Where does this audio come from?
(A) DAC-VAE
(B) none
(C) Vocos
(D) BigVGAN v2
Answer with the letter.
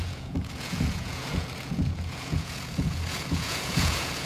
C